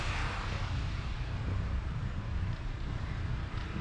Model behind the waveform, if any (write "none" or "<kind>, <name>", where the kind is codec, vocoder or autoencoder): vocoder, BigVGAN v2